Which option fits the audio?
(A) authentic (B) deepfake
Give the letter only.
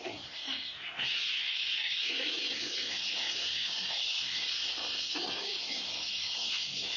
B